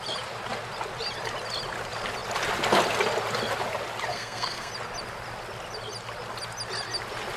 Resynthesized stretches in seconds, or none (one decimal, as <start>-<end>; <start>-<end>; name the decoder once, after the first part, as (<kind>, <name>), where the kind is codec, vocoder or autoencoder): 4.1-4.7 (codec, SNAC)